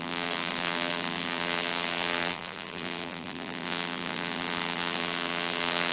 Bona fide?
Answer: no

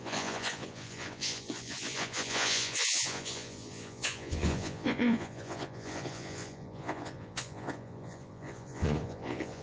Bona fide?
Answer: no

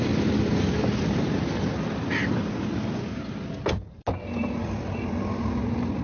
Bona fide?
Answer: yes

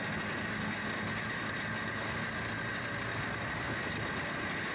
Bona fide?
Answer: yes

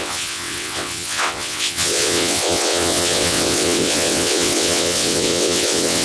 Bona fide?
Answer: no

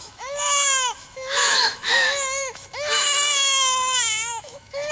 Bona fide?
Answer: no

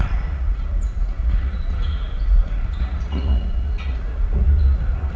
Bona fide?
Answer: no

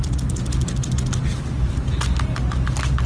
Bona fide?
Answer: yes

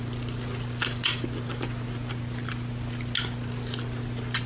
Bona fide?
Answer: yes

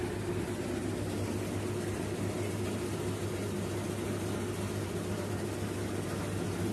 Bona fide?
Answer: yes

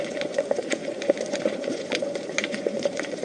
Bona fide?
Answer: no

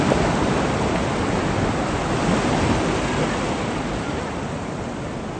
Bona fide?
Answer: yes